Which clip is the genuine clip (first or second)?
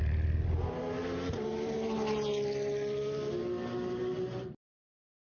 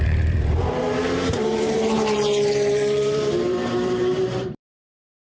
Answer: first